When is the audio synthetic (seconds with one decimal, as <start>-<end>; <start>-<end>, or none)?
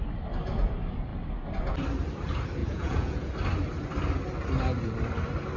2.6-3.3